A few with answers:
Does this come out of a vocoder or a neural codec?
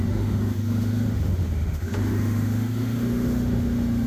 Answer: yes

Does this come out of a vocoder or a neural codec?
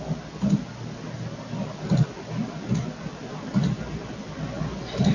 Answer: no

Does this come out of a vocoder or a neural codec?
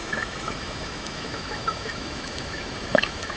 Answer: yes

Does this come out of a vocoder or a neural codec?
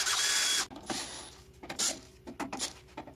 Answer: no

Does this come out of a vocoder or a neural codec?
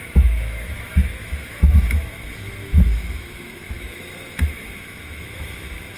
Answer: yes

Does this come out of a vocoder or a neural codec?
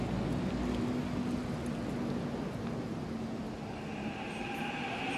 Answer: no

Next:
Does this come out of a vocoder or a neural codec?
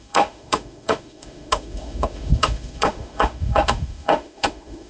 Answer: yes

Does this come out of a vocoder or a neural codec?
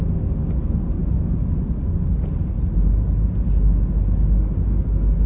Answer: no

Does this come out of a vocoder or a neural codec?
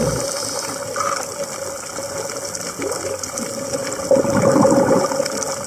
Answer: no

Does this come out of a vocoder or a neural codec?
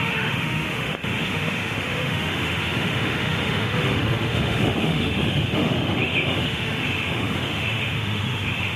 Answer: yes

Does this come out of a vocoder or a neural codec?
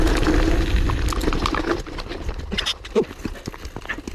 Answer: no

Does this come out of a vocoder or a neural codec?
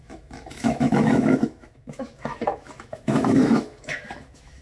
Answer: yes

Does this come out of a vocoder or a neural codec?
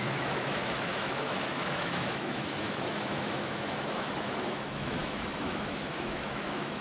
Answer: yes